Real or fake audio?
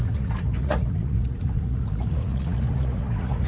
fake